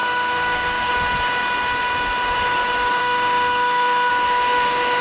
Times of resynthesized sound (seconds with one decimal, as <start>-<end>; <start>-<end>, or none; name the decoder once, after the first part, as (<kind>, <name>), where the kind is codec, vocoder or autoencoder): 0.0-0.9 (autoencoder, DAC-VAE); 3.0-4.1